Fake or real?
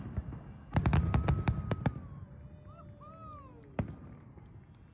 real